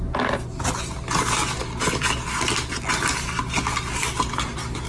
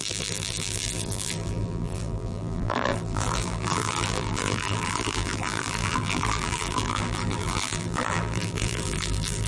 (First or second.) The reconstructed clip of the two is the second